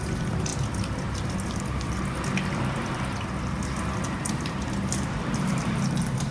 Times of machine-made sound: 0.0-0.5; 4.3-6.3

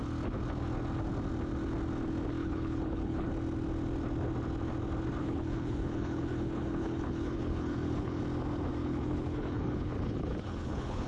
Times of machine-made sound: 2.4-3.3; 5.2-8.2; 8.8-11.1